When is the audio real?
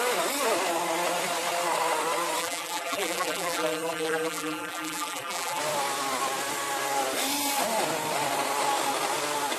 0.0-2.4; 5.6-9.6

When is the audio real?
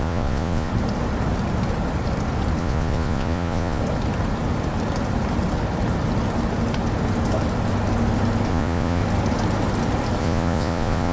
0.7-2.6; 3.8-8.5; 9.0-10.2